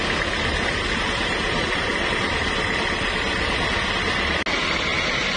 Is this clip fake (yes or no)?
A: no